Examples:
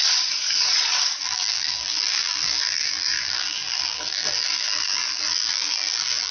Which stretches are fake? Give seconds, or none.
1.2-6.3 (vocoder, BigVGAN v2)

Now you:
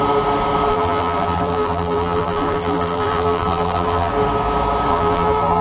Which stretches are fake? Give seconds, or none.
0.7-4.1 (vocoder, BigVGAN v2); 4.9-5.6

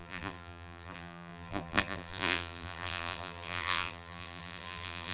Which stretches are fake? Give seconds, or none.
0.0-5.1 (vocoder, BigVGAN v2)